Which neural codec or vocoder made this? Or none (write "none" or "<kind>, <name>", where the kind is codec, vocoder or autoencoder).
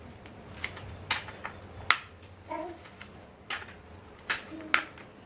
none